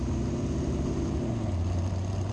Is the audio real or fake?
real